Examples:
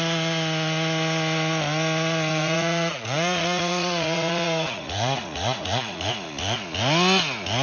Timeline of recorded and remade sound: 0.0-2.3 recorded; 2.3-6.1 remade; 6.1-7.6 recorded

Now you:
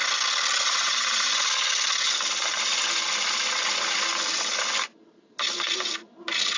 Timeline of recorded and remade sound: 0.0-6.6 recorded

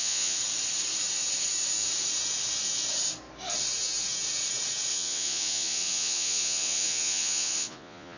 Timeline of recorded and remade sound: 0.0-0.4 remade; 0.4-4.9 recorded; 4.9-8.2 remade

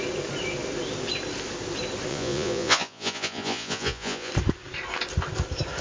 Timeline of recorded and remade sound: 0.0-2.1 recorded; 2.1-4.3 remade; 4.3-5.8 recorded

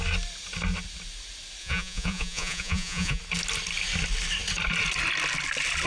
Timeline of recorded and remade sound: 0.0-1.6 recorded; 1.6-3.2 remade; 3.2-5.9 recorded

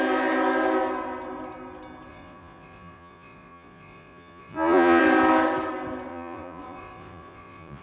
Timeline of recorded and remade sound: 0.0-2.1 recorded; 2.1-5.0 remade; 5.0-6.1 recorded; 6.1-7.8 remade